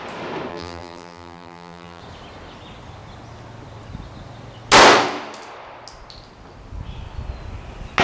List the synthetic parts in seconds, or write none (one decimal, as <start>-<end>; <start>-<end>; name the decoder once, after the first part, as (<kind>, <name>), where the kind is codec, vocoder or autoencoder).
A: 0.5-2.0 (vocoder, BigVGAN v2)